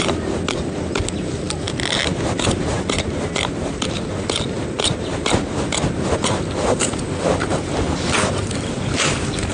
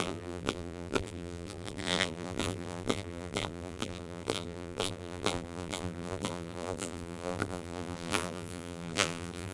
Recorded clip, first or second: first